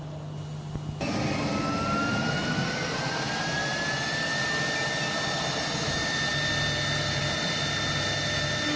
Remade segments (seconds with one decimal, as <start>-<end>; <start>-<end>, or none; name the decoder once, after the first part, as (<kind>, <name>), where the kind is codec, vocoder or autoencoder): none